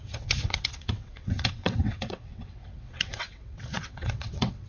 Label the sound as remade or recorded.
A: remade